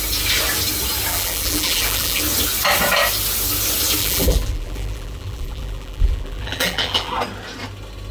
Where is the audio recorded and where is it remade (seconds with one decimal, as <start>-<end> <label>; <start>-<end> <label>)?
0.0-1.1 recorded; 1.1-2.2 remade; 2.2-4.0 recorded; 4.0-7.1 remade; 7.1-8.1 recorded

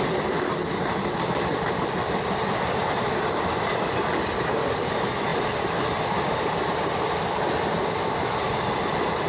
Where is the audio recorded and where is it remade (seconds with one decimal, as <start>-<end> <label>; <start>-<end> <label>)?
0.0-5.3 recorded; 5.3-8.6 remade; 8.6-9.3 recorded

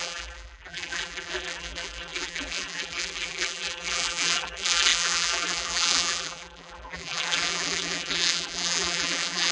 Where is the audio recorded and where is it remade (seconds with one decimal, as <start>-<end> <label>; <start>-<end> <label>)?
0.0-9.5 remade

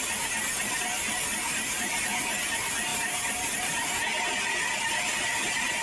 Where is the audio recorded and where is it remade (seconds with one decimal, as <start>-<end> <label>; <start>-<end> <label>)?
0.0-1.3 recorded; 1.3-2.2 remade; 2.2-2.9 recorded; 2.9-4.3 remade; 4.3-5.8 recorded

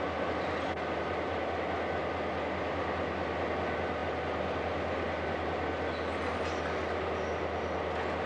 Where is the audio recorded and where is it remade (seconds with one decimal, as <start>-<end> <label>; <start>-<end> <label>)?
0.0-8.3 recorded

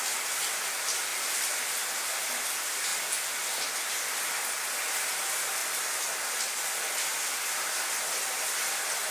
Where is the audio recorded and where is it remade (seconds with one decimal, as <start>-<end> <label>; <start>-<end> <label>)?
0.0-1.1 remade; 1.1-2.2 recorded; 2.2-2.9 remade; 2.9-4.9 recorded; 4.9-5.6 remade; 5.6-6.9 recorded; 6.9-9.1 remade

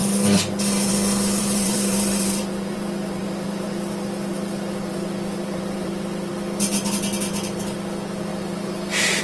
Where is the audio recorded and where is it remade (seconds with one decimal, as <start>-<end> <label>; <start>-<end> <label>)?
0.0-1.4 recorded; 1.4-3.9 remade; 3.9-4.3 recorded; 4.3-6.3 remade; 6.3-8.3 recorded; 8.3-9.2 remade